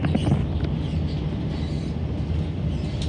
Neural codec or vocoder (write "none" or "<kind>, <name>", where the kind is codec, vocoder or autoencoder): none